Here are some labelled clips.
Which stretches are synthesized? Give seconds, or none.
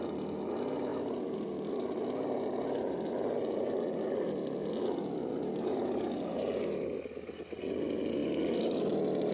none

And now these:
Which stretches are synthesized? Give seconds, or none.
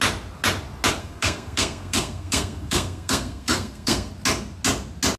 1.0-4.1 (codec, SNAC)